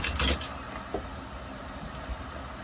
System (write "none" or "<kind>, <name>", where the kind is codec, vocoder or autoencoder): none